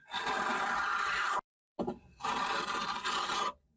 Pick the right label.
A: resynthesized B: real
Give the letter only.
B